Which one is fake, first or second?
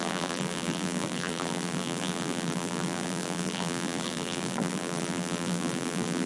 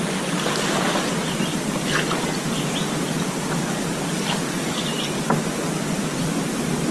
first